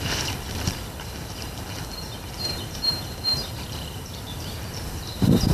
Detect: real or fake fake